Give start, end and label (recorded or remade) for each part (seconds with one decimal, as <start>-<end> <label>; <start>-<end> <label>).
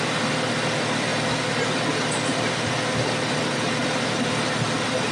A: 0.0-5.1 recorded